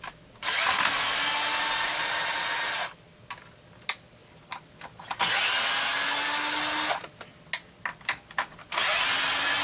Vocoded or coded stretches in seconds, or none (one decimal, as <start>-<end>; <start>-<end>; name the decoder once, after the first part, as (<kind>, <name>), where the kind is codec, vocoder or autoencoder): none